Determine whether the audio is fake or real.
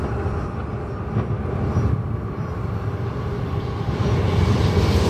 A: real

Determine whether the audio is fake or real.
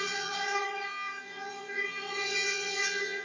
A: fake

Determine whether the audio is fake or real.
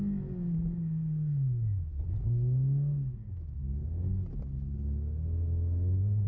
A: real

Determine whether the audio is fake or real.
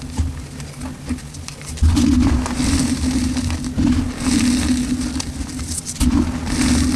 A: fake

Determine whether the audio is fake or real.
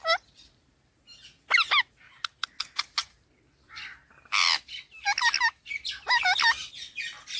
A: real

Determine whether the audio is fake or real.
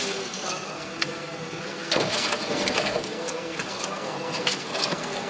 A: fake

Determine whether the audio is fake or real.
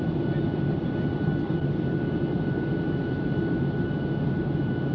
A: real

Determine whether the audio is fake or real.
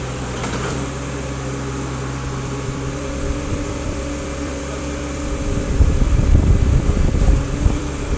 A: fake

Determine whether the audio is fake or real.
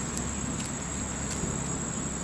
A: real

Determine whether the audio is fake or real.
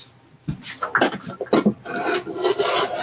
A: real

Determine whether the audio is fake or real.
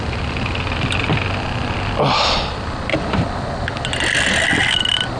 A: real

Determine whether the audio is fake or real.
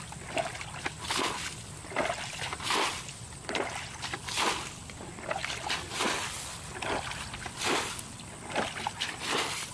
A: real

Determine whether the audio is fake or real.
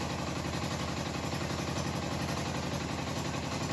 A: real